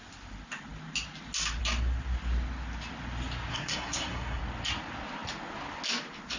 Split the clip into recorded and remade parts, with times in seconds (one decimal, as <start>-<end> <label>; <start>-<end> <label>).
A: 0.0-3.5 recorded; 3.5-4.4 remade; 4.4-6.4 recorded